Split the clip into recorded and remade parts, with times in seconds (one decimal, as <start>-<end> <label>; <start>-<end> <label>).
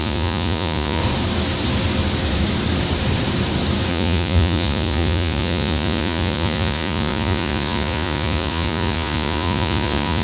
0.0-1.0 remade; 1.0-3.9 recorded; 3.9-10.2 remade